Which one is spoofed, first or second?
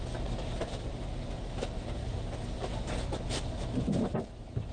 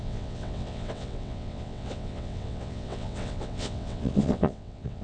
second